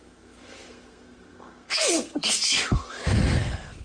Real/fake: fake